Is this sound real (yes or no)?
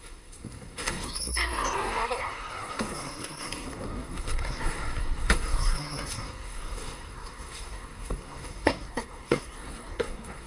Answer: no